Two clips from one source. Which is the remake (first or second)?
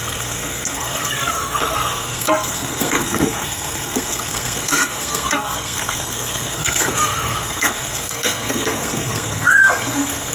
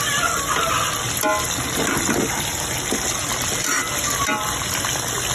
first